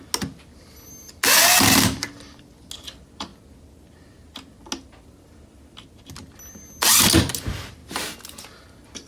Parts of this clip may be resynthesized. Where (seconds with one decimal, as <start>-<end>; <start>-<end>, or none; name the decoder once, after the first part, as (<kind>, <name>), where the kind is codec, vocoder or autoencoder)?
none